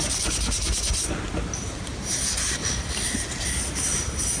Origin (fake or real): real